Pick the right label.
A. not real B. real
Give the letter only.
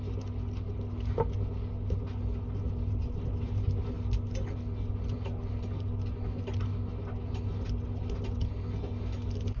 B